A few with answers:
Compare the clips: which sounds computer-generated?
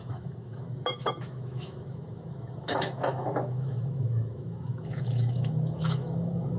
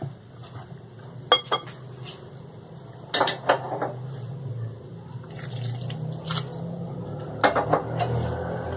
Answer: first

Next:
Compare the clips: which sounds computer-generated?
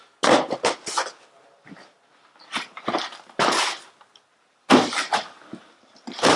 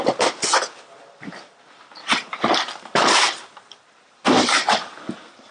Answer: second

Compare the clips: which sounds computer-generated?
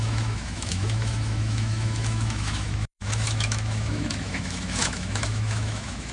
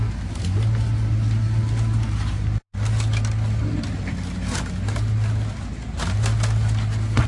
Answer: first